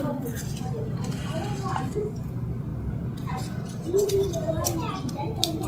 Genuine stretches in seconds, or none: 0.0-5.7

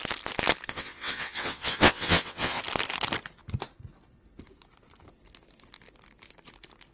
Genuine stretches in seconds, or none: 0.0-0.7; 2.6-6.9

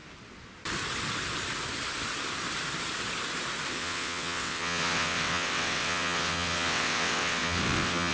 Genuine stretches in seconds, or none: 0.0-3.7

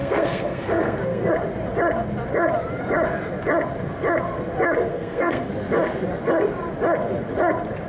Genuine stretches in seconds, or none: 1.3-4.9; 5.5-7.9

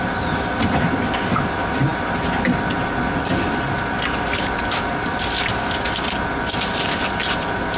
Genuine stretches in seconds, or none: 0.0-7.8

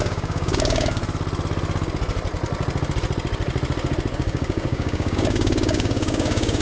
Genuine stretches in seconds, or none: 1.0-4.1

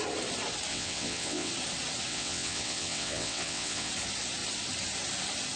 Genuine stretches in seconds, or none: 0.0-0.7; 1.5-2.1; 3.9-5.6

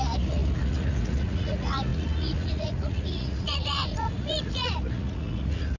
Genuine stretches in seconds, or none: none